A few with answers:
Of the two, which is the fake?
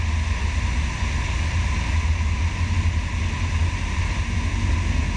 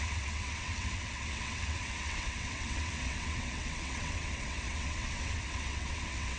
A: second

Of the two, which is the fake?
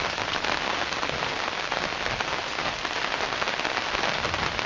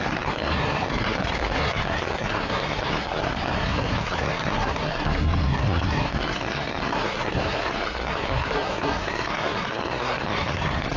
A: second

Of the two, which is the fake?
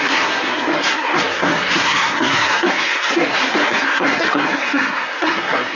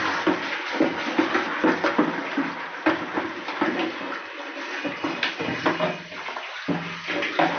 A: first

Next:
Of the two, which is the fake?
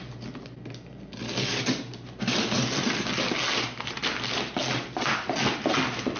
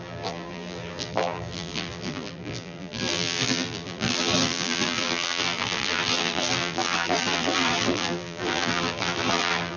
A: second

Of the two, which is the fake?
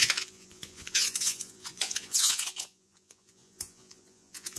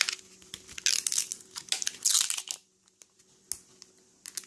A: first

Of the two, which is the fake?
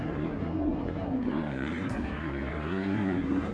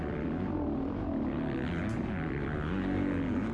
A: first